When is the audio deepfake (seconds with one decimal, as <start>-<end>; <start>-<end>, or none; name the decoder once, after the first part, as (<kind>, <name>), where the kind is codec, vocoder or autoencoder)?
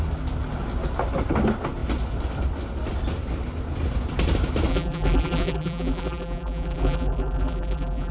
4.7-8.1 (vocoder, BigVGAN v2)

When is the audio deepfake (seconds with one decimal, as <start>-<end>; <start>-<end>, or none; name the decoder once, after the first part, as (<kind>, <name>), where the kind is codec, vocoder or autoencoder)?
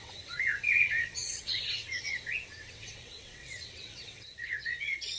0.0-5.2 (vocoder, WaveNeXt)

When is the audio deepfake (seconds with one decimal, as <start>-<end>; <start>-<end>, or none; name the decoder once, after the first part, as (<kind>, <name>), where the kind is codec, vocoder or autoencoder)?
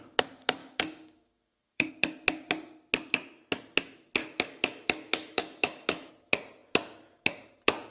0.6-1.9 (autoencoder, DAC-VAE); 4.2-6.1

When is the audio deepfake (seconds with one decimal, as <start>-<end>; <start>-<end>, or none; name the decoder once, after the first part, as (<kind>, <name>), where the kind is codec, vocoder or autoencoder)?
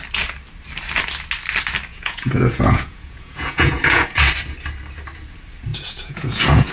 1.9-4.2 (vocoder, Vocos); 5.7-6.7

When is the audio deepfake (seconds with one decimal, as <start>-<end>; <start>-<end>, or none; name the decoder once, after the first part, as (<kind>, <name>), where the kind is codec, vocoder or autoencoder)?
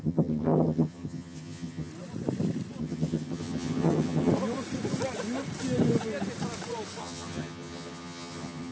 0.0-1.9 (vocoder, HiFi-GAN); 2.8-4.3; 7.0-8.7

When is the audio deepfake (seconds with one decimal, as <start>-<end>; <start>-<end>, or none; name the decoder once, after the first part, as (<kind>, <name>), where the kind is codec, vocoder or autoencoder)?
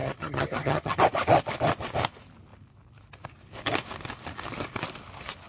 0.0-1.0 (vocoder, HiFi-GAN)